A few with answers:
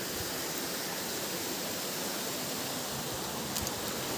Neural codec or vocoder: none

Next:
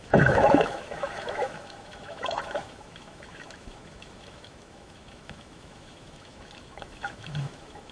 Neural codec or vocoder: autoencoder, DAC-VAE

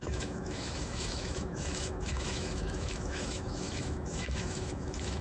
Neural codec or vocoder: autoencoder, DAC-VAE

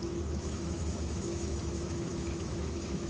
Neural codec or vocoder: autoencoder, DAC-VAE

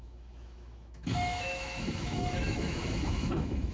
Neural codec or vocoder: autoencoder, DAC-VAE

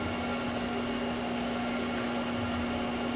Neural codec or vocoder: none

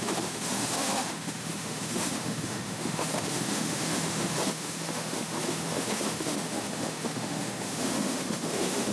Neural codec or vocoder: autoencoder, DAC-VAE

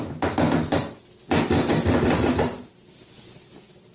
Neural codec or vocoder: none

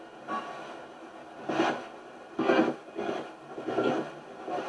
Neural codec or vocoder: none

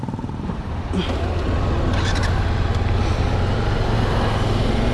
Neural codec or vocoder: none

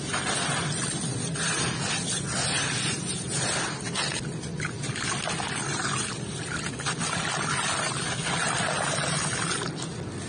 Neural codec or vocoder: none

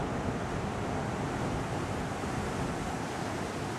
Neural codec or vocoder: none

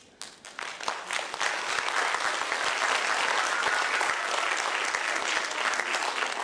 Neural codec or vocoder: none